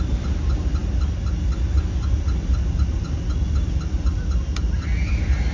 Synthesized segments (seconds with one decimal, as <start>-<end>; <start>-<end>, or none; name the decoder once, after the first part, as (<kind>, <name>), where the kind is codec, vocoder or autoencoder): none